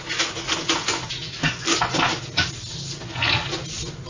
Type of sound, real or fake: real